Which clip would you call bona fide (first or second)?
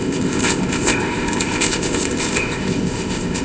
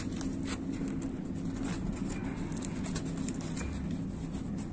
second